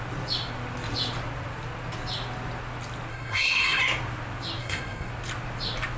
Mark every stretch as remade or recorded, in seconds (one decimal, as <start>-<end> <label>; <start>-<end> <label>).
0.0-3.1 recorded; 3.1-3.8 remade; 3.8-4.6 recorded; 4.6-5.1 remade; 5.1-6.0 recorded